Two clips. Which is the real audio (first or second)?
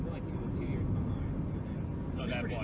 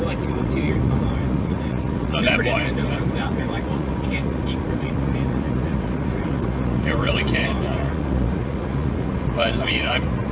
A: first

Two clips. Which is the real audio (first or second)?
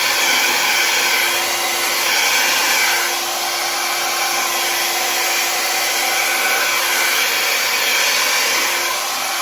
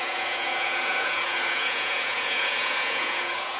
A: first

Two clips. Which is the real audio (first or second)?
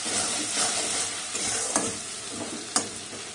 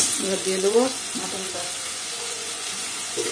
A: first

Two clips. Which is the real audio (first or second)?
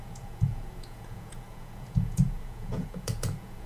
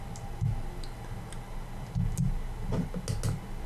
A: second